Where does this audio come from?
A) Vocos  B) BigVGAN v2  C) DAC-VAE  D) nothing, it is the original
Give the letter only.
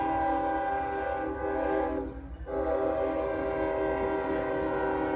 D